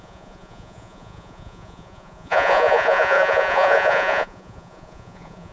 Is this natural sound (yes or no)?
no